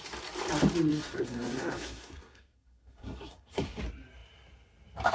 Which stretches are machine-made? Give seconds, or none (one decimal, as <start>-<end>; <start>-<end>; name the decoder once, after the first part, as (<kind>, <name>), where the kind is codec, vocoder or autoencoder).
0.9-3.8 (codec, SNAC)